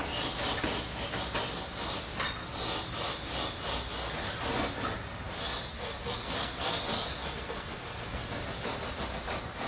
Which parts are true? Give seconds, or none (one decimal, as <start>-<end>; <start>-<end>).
0.0-5.7; 8.4-9.7